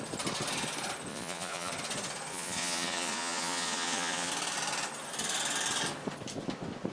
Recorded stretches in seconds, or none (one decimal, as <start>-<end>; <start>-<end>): 0.0-1.1; 1.7-2.3; 4.3-6.9